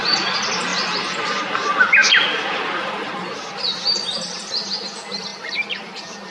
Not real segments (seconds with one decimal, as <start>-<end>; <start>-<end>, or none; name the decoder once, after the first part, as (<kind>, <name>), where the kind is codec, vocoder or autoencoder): 0.7-1.5 (vocoder, BigVGAN v2); 2.0-2.9; 5.3-6.3